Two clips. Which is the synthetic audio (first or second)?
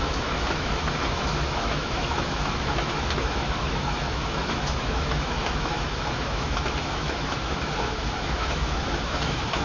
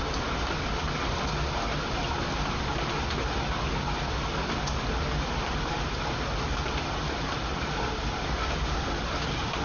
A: first